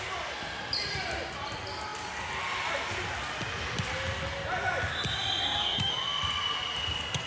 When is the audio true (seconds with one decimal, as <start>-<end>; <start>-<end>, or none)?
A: 0.0-5.4; 5.9-7.3